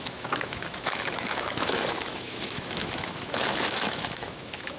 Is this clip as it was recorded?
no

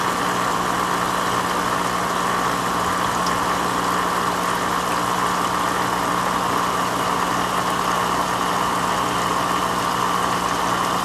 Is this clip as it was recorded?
yes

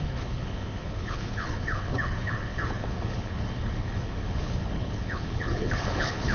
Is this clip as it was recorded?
no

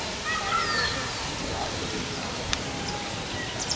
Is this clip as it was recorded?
yes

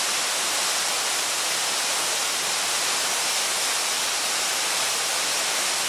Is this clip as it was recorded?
yes